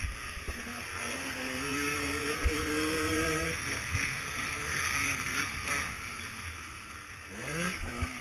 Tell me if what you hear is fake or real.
fake